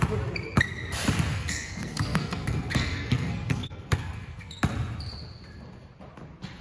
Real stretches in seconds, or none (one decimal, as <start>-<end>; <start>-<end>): 0.0-1.3; 4.6-6.6